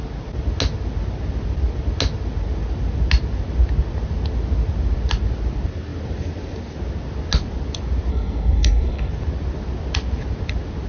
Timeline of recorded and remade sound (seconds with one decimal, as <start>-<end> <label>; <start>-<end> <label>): 0.0-8.1 recorded; 8.1-9.1 remade; 9.1-10.9 recorded